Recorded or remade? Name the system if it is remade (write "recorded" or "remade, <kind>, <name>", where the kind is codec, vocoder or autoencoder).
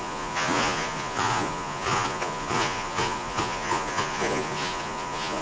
remade, vocoder, Vocos